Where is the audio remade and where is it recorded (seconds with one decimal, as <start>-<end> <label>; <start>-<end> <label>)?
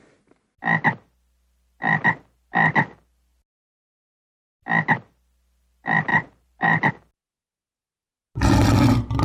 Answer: 0.0-6.1 recorded; 6.1-6.9 remade; 6.9-9.2 recorded